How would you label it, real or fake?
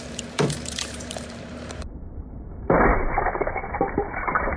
fake